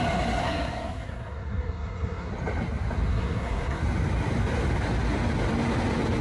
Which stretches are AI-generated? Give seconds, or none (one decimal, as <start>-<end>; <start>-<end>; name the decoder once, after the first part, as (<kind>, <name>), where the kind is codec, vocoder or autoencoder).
0.4-2.3 (codec, SNAC); 3.1-3.8